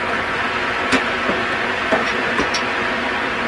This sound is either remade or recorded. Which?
remade